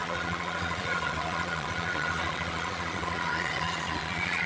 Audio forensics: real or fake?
fake